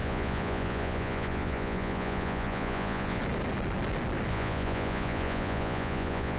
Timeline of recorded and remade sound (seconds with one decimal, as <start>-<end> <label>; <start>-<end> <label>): 0.0-3.2 remade; 3.2-4.3 recorded; 4.3-6.4 remade

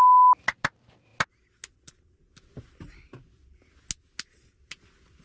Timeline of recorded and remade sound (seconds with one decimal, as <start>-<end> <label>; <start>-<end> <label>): 0.0-5.2 recorded

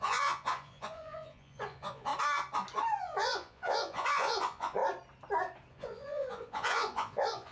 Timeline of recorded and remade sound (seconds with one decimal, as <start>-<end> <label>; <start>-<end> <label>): 0.0-2.1 remade; 2.1-3.0 recorded; 3.0-4.8 remade; 4.8-5.7 recorded; 5.7-7.5 remade

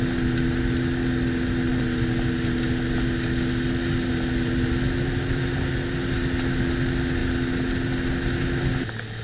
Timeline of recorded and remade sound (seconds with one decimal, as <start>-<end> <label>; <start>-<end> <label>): 0.0-9.2 recorded